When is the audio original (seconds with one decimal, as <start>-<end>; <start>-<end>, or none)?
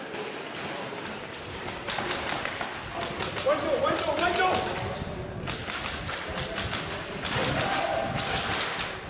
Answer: 0.0-9.1